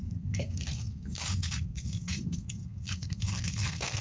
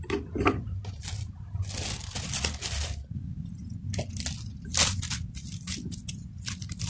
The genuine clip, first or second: second